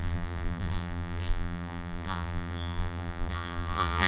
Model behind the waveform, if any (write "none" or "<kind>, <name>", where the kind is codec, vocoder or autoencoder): vocoder, BigVGAN v2